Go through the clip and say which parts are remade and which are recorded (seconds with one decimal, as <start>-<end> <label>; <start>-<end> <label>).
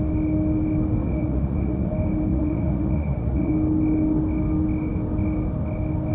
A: 0.0-1.0 recorded; 1.0-1.9 remade; 1.9-2.3 recorded; 2.3-3.5 remade; 3.5-6.1 recorded